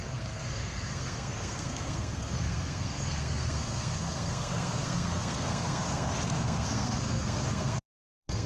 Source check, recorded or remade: remade